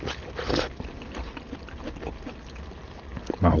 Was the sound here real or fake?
real